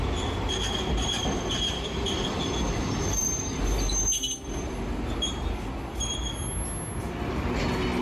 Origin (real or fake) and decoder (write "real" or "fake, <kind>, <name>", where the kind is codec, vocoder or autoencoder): real